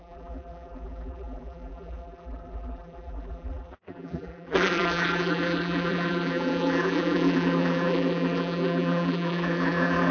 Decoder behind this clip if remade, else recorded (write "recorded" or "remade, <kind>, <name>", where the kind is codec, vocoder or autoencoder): remade, vocoder, BigVGAN v2